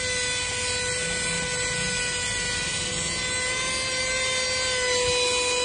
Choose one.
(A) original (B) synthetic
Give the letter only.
A